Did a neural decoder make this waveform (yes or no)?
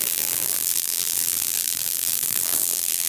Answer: yes